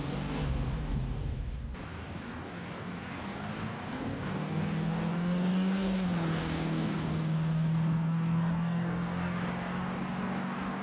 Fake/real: fake